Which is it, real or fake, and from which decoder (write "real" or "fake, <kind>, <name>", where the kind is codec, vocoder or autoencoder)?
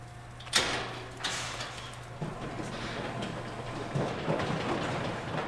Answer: real